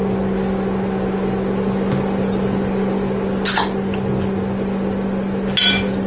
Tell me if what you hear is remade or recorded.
recorded